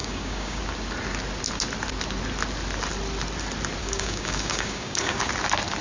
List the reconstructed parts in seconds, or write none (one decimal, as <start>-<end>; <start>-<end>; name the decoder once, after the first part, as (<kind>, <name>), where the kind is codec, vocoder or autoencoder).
0.0-0.6 (codec, DAC); 3.8-5.3